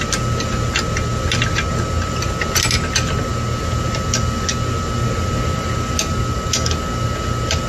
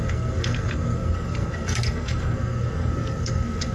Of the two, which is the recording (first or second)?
first